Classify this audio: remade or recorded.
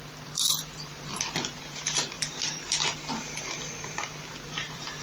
remade